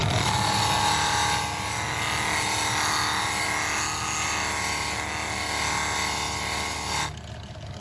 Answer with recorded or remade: recorded